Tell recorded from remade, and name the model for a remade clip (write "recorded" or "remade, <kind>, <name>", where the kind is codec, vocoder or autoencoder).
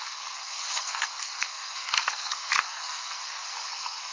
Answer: remade, codec, SNAC